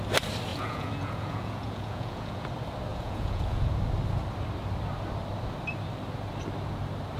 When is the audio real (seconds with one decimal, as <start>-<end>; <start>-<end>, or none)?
0.0-0.5; 2.5-2.9; 3.7-7.2